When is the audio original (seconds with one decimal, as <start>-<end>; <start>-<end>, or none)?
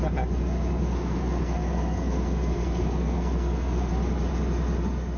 0.0-0.8; 3.9-5.2